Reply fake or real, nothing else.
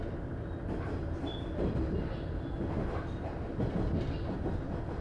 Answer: real